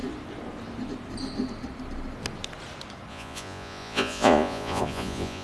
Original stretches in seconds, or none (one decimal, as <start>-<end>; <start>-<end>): 0.0-3.1